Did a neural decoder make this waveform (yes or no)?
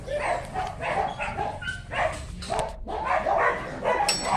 no